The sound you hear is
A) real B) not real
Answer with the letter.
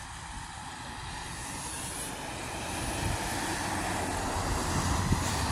A